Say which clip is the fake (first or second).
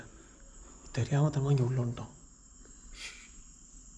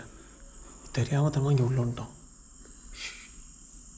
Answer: first